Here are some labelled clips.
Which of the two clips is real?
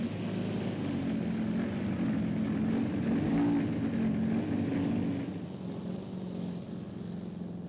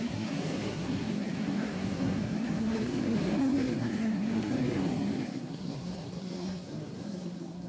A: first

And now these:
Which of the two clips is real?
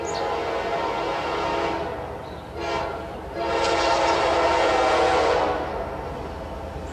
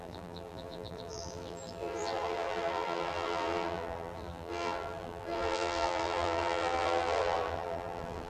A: first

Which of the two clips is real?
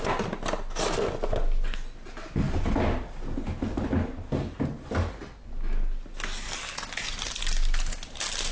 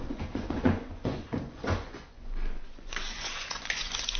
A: first